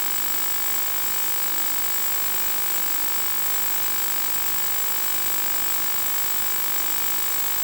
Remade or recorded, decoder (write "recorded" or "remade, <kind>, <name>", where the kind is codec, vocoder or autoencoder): recorded